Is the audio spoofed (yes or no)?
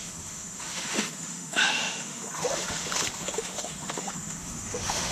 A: yes